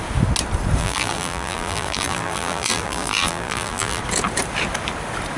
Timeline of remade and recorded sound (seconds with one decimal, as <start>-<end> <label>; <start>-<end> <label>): 0.0-0.8 recorded; 0.8-4.0 remade; 4.0-5.4 recorded